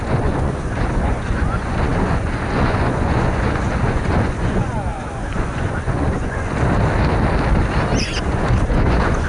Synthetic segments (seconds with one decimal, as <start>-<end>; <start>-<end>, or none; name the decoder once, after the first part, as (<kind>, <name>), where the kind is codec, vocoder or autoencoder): 0.0-6.5 (vocoder, Vocos); 8.0-9.3